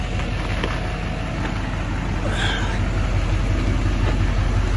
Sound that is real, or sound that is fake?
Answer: real